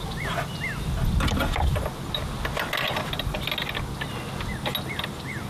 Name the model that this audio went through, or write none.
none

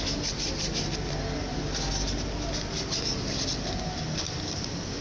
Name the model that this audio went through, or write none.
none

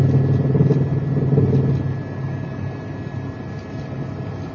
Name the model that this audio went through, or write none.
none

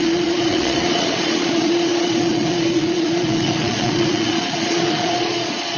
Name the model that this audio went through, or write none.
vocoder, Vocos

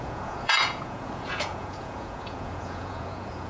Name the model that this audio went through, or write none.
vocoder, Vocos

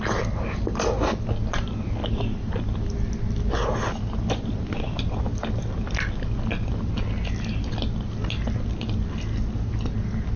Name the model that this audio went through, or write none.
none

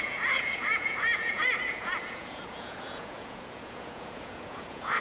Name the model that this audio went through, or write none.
vocoder, Vocos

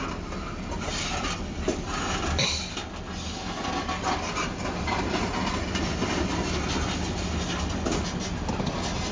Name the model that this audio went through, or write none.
none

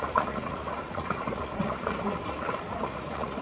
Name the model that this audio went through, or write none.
vocoder, Vocos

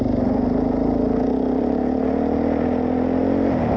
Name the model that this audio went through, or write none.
none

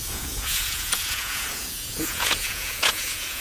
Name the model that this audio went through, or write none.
vocoder, Vocos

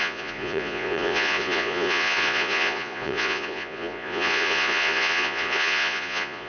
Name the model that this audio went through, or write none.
vocoder, Vocos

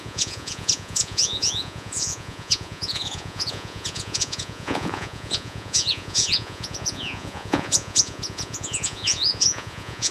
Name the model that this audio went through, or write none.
vocoder, Vocos